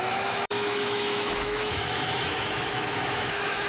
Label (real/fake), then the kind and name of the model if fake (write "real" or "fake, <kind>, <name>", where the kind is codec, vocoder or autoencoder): fake, autoencoder, DAC-VAE